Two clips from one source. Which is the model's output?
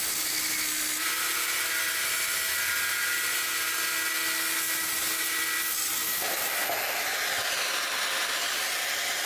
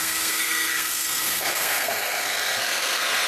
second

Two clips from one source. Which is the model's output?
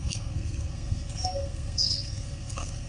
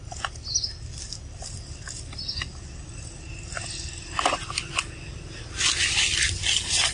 first